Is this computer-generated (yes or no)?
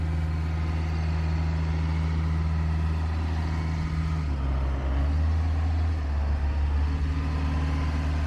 no